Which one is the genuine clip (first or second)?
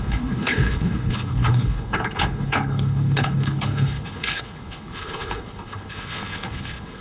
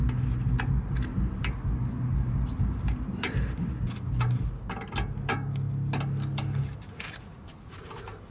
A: second